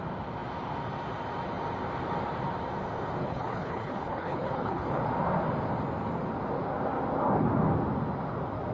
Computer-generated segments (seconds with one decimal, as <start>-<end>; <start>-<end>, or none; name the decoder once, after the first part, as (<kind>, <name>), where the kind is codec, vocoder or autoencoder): 3.2-5.0 (codec, HILCodec)